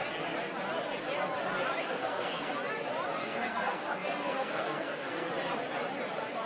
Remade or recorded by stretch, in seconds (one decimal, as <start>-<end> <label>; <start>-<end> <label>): 0.0-1.8 recorded; 1.8-2.5 remade; 2.5-3.2 recorded; 3.2-5.3 remade; 5.3-6.5 recorded